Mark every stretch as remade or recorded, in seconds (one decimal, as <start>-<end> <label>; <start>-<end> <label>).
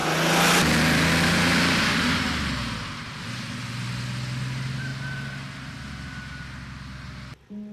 0.0-7.7 recorded